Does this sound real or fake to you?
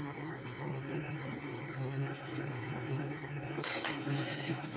fake